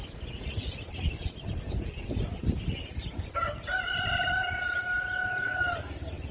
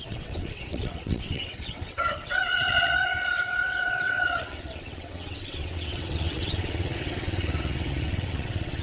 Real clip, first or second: first